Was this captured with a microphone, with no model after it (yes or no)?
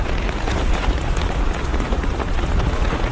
no